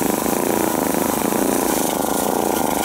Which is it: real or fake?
real